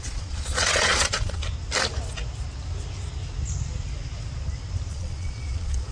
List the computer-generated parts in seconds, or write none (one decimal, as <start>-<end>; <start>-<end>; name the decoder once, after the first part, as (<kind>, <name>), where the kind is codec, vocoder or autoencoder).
0.0-1.4 (vocoder, Vocos); 4.9-5.9